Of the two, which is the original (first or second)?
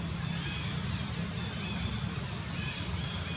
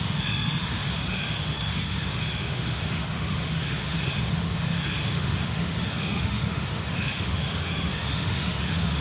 first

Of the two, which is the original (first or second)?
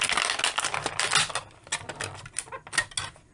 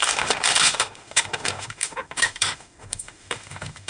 first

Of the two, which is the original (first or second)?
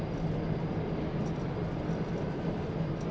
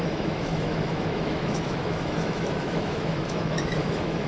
first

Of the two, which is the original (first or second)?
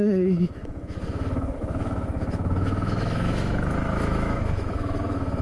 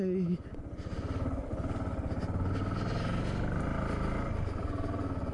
second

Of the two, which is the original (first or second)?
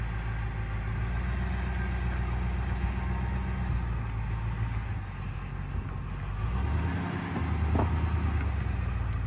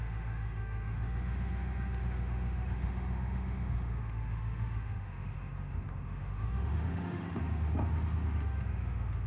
first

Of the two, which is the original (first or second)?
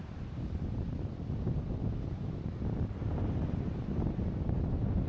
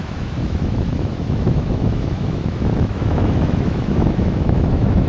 first